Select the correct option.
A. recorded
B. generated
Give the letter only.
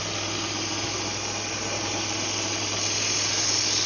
A